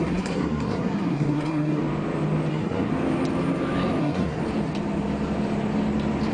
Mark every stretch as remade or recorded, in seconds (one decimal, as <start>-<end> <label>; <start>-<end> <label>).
0.0-1.8 remade; 1.8-2.5 recorded; 2.5-2.9 remade; 2.9-4.0 recorded; 4.0-4.4 remade; 4.4-6.3 recorded